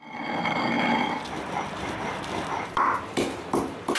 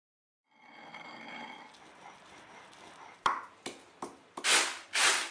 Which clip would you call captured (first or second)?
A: second